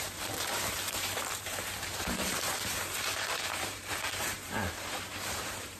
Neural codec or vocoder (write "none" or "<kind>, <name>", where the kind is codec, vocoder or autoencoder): vocoder, BigVGAN v2